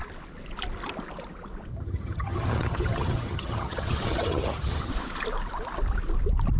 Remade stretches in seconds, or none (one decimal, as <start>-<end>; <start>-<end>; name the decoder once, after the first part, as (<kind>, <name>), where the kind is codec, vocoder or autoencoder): 1.7-4.9 (vocoder, HiFi-GAN)